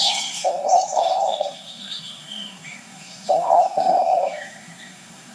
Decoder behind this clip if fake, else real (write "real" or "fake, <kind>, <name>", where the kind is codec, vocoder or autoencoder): fake, codec, SNAC